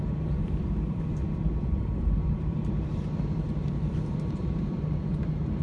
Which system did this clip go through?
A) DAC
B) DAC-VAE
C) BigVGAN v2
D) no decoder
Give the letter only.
C